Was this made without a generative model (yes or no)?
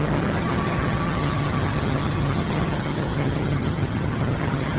no